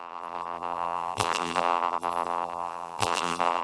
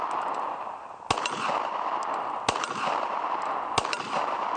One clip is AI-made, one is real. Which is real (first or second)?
second